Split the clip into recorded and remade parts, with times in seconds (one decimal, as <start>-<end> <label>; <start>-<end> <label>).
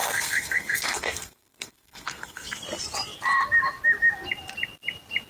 0.0-2.6 remade; 2.6-5.3 recorded